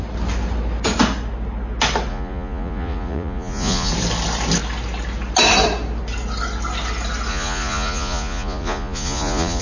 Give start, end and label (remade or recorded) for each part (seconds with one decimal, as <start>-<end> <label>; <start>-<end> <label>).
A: 0.0-2.1 recorded; 2.1-3.9 remade; 3.9-7.3 recorded; 7.3-9.6 remade